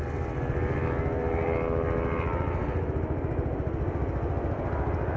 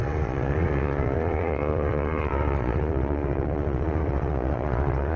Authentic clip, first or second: first